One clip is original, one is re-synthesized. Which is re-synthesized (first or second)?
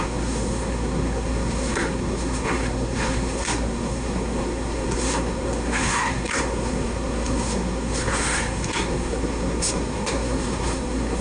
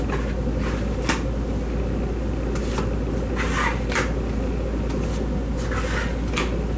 first